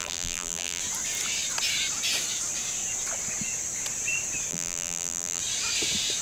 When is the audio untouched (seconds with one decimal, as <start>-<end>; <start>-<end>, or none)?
0.8-4.5; 5.4-6.2